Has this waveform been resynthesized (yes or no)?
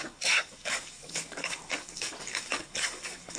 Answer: yes